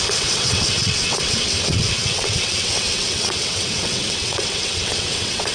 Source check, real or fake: fake